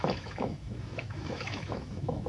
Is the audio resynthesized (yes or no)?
yes